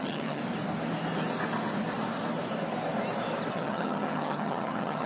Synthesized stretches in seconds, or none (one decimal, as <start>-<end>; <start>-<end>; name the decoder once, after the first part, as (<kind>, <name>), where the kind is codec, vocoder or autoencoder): 0.0-0.4 (vocoder, HiFi-GAN); 3.5-5.1